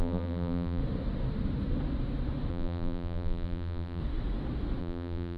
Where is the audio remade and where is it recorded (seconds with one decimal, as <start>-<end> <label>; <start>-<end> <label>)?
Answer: 0.0-0.8 remade; 0.8-2.5 recorded; 2.5-4.0 remade; 4.0-4.8 recorded; 4.8-5.4 remade